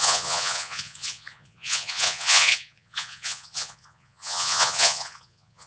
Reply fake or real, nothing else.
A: fake